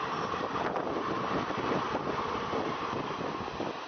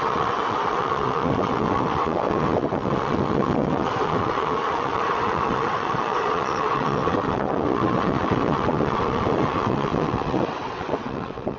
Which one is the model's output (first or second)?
second